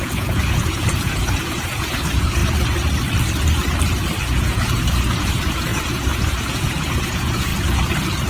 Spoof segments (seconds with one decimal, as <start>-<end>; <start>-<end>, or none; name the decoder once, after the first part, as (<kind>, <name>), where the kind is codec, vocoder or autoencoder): 0.0-2.4 (vocoder, Vocos); 4.3-7.5